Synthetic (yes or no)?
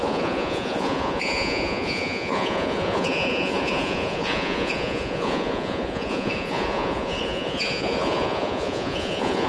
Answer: yes